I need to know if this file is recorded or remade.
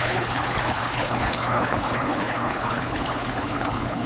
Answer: remade